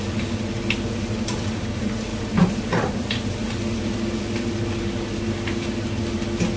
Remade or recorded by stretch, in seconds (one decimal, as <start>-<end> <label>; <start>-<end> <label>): 0.0-6.6 recorded